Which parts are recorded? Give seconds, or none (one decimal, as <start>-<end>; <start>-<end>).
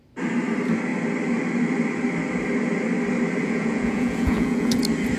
0.0-3.4; 4.8-5.2